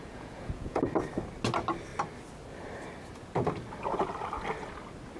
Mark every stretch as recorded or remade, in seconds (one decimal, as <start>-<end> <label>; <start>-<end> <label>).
0.0-0.8 remade; 0.8-5.2 recorded